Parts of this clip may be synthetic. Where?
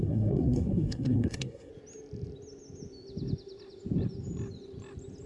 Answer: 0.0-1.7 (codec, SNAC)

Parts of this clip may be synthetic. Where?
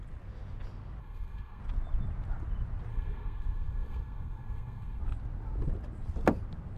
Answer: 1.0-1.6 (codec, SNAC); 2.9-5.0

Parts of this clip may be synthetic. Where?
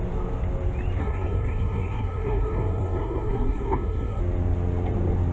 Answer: 1.0-4.2 (codec, SNAC)